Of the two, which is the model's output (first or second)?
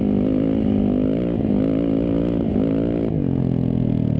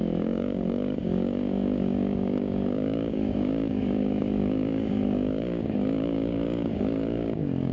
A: second